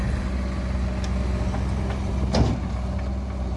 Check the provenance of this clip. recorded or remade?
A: recorded